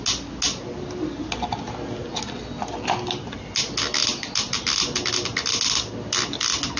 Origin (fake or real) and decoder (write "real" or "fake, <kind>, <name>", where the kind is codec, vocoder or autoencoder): real